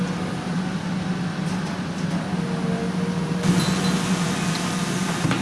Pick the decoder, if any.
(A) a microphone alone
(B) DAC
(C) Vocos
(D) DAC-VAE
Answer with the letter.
A